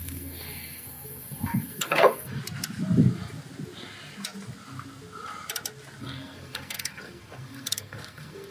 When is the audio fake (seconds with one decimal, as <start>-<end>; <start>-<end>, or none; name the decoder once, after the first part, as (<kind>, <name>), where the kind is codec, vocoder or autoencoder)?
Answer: 0.0-2.4 (codec, SNAC); 6.0-8.5